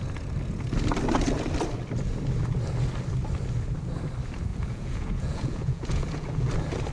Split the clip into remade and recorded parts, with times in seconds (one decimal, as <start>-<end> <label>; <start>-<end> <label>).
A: 0.0-4.5 recorded; 4.5-6.5 remade; 6.5-6.9 recorded